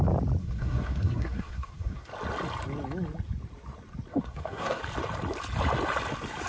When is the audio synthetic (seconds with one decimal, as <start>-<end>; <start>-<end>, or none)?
0.4-2.1; 4.1-4.8